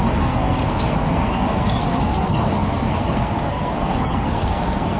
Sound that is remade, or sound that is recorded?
remade